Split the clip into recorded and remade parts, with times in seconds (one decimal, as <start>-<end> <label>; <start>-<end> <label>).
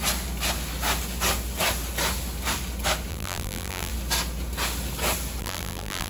0.0-3.1 recorded; 3.1-3.9 remade; 3.9-5.4 recorded; 5.4-6.1 remade